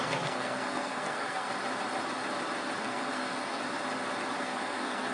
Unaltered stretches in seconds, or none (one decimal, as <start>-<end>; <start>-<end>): 1.5-2.8; 3.6-4.4